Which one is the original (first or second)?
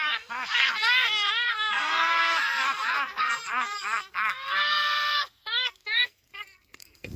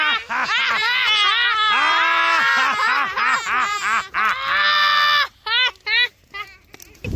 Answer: second